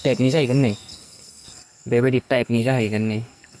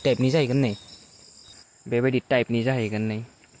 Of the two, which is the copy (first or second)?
first